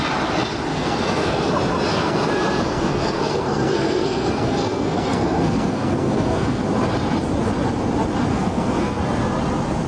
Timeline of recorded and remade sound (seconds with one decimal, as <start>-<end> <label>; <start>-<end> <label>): 0.0-0.7 recorded; 0.7-1.5 remade; 1.5-1.9 recorded; 1.9-6.6 remade; 6.6-8.3 recorded; 8.3-9.0 remade; 9.0-9.9 recorded